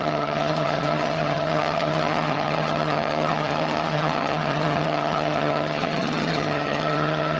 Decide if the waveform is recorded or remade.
remade